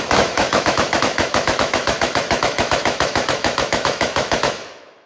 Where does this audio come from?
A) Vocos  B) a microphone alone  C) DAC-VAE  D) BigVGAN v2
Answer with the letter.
C